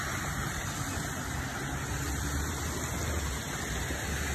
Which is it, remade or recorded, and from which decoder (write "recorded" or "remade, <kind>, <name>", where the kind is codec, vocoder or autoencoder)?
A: recorded